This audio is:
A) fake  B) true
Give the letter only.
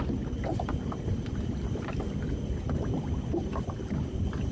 B